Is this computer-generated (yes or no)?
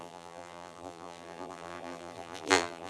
yes